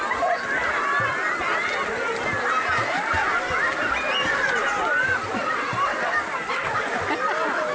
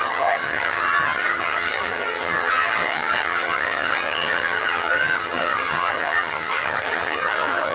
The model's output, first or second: second